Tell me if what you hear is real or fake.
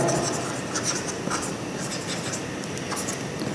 fake